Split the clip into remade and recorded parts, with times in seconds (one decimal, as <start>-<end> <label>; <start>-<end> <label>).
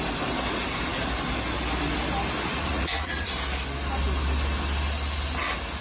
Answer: 0.0-2.5 recorded; 2.5-3.3 remade; 3.3-5.8 recorded